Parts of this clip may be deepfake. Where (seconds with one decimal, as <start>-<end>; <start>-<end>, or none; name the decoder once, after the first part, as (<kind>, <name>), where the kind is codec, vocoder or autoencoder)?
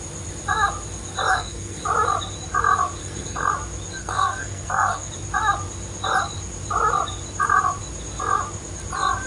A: 1.3-1.8 (codec, SNAC); 3.0-3.5; 4.0-5.1